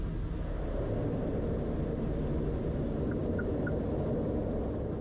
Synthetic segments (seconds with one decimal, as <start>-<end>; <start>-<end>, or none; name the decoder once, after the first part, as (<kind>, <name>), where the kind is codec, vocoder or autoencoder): 3.2-5.0 (vocoder, BigVGAN v2)